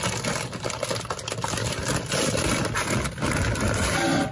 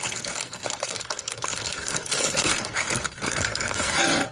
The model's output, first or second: second